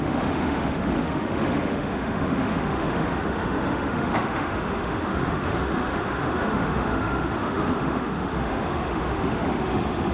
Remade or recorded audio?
remade